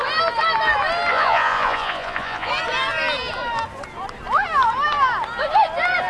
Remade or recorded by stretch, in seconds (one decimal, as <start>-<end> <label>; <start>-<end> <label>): 0.0-1.1 recorded; 1.1-2.5 remade; 2.5-6.1 recorded